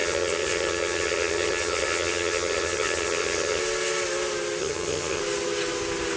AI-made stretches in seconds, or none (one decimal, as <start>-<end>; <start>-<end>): 0.0-3.6; 4.6-5.2